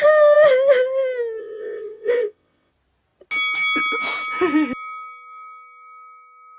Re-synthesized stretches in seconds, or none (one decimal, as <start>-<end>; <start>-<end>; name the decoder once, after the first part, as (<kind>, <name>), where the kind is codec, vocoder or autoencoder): 1.4-2.7 (vocoder, WaveNeXt)